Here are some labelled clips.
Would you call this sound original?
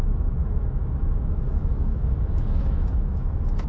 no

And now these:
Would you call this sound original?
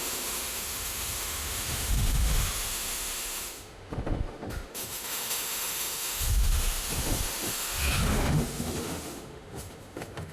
no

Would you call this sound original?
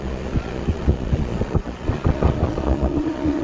no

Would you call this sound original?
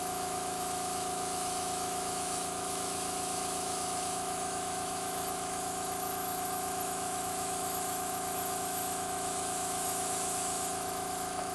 no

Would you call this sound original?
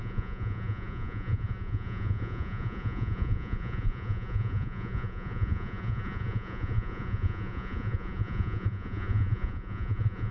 no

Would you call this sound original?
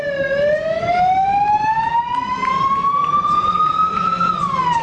yes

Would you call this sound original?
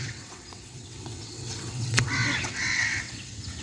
no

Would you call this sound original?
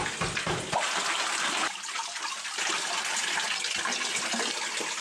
yes